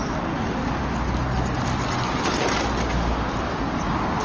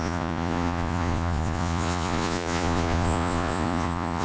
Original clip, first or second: first